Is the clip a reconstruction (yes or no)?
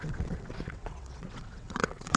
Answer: yes